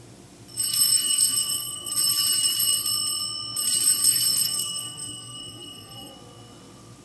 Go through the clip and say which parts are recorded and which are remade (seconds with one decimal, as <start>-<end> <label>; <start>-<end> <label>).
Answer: 0.0-0.7 recorded; 0.7-1.9 remade; 1.9-4.0 recorded; 4.0-6.1 remade; 6.1-7.0 recorded